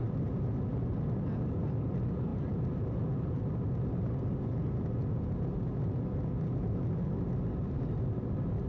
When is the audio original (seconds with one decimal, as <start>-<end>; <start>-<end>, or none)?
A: 0.0-8.7